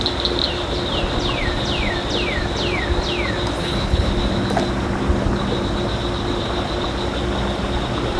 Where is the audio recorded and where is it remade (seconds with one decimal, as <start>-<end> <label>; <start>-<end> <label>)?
0.0-3.6 recorded; 3.6-4.1 remade; 4.1-8.2 recorded